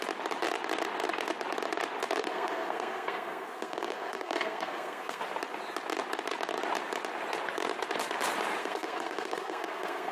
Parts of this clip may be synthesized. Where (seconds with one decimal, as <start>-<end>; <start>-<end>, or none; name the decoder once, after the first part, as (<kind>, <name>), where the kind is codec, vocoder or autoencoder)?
2.2-5.2 (codec, SNAC); 8.6-10.1